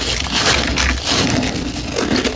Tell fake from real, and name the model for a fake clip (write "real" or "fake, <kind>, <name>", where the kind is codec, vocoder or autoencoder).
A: real